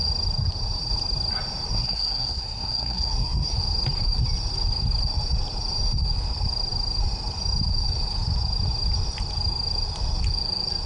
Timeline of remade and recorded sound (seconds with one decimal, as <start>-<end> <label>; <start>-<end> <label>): 0.0-1.7 recorded; 1.7-3.5 remade; 3.5-10.9 recorded